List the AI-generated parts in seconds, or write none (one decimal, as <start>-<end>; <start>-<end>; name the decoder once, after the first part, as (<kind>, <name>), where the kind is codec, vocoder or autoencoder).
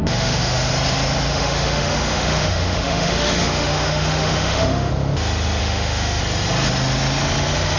0.0-0.7 (autoencoder, DAC-VAE); 1.3-4.9; 5.6-6.2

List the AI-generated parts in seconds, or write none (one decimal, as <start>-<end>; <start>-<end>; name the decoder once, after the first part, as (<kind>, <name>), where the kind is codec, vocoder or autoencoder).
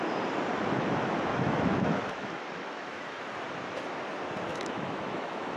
0.5-3.2 (autoencoder, DAC-VAE); 4.5-5.6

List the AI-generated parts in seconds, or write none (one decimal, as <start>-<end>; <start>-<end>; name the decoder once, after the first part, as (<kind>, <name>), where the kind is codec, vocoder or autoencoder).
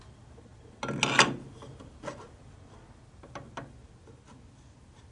none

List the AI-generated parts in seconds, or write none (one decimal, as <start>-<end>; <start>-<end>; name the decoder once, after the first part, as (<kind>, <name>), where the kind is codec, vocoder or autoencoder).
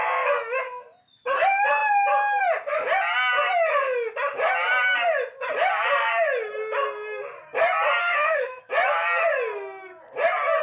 8.0-8.6 (autoencoder, DAC-VAE)